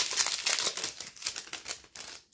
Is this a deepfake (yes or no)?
no